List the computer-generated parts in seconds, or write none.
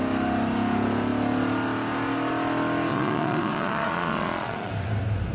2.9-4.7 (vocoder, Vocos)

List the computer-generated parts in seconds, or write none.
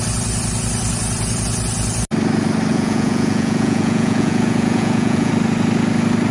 2.7-5.3 (vocoder, Vocos)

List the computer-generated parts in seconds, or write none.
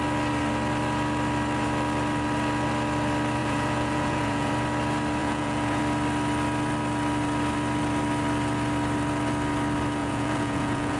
3.4-4.5 (vocoder, Vocos); 5.2-5.8; 10.0-11.0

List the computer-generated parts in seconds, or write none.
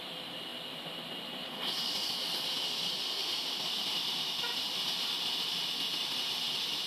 none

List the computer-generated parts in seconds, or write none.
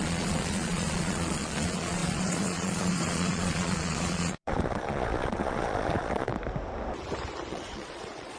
0.0-6.3 (vocoder, Vocos); 7.5-8.4